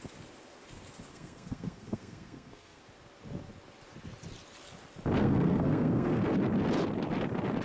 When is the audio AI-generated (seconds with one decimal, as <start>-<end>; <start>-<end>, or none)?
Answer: 1.1-2.8; 5.2-6.2